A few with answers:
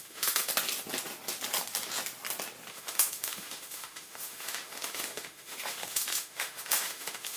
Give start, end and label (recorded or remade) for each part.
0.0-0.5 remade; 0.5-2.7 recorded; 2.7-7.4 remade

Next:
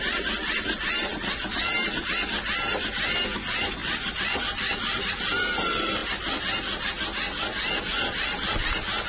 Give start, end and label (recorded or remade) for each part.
0.0-1.1 recorded; 1.1-2.9 remade; 2.9-3.8 recorded; 3.8-5.0 remade; 5.0-9.1 recorded